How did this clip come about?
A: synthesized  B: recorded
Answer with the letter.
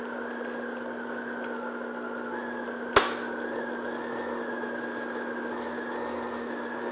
B